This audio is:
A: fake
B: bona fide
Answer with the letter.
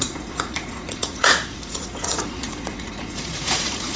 A